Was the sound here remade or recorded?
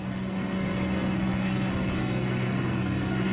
remade